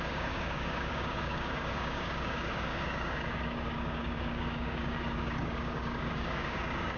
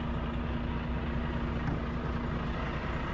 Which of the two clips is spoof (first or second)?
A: first